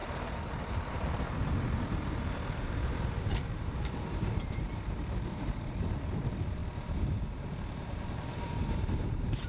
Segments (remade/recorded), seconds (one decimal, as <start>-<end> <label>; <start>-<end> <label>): 0.0-6.6 remade; 6.6-7.7 recorded; 7.7-9.5 remade